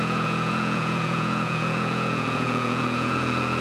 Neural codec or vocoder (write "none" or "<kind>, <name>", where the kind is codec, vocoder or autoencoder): vocoder, Vocos